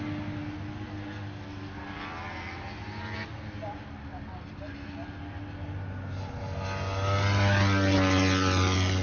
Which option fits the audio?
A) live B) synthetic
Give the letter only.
A